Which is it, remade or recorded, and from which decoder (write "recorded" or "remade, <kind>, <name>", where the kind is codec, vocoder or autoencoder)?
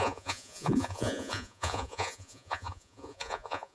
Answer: remade, vocoder, Vocos